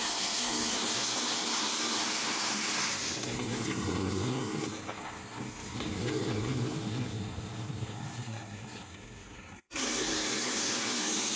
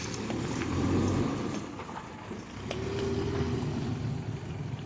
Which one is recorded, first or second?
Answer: second